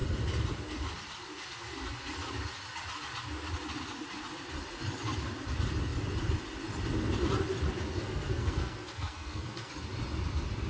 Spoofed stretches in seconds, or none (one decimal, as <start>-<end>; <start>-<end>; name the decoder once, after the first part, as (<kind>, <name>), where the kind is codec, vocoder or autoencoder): 7.9-9.7 (codec, SNAC)